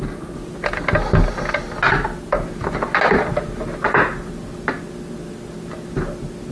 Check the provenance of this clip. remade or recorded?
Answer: recorded